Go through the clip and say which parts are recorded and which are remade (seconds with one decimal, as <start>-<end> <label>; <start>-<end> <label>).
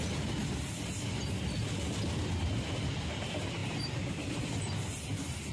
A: 0.0-5.5 recorded